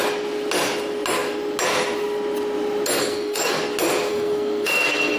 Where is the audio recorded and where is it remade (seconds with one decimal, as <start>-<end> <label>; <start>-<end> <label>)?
0.0-3.0 recorded; 3.0-3.6 remade; 3.6-4.1 recorded; 4.1-5.2 remade